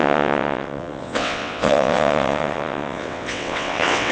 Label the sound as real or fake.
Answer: fake